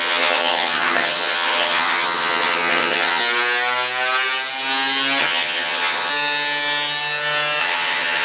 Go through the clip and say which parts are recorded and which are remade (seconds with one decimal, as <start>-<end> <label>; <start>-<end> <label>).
0.0-3.2 remade; 3.2-5.2 recorded; 5.2-6.1 remade; 6.1-7.6 recorded; 7.6-8.2 remade